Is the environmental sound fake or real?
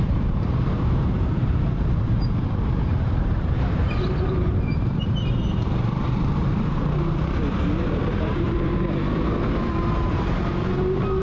fake